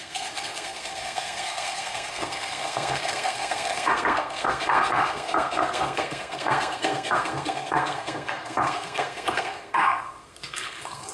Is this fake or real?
fake